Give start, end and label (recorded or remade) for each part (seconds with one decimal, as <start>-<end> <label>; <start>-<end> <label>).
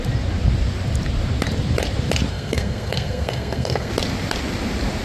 0.0-2.3 recorded; 2.3-3.9 remade; 3.9-5.0 recorded